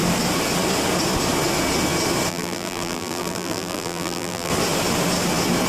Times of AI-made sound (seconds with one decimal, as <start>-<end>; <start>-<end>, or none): 2.3-4.5